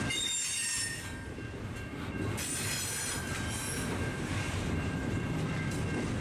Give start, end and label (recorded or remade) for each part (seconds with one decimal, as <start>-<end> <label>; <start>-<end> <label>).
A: 0.0-4.1 recorded; 4.1-5.4 remade; 5.4-6.2 recorded